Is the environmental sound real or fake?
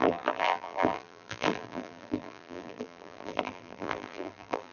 fake